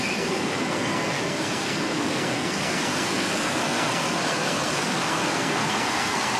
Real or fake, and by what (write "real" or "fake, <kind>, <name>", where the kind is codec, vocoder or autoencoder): fake, codec, SNAC